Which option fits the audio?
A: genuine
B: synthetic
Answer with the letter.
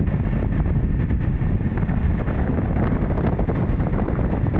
A